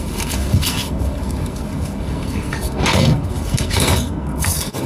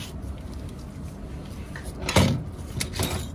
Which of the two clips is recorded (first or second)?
second